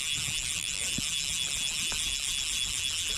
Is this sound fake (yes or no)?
no